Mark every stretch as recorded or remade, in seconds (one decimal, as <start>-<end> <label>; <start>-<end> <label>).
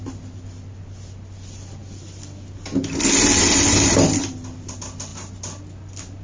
0.0-6.2 recorded